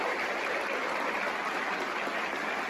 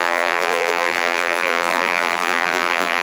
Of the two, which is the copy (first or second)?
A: second